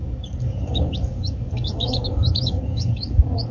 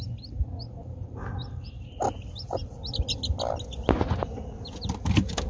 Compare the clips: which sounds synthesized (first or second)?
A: first